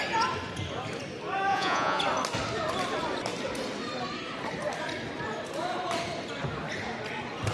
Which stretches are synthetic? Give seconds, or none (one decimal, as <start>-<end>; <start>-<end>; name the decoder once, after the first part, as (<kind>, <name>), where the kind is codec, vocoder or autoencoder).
1.5-2.0 (vocoder, Vocos)